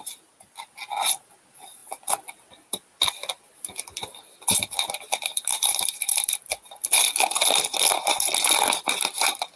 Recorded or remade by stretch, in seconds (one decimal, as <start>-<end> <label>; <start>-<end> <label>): 0.0-5.5 recorded; 5.5-6.1 remade; 6.1-9.6 recorded